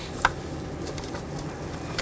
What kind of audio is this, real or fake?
real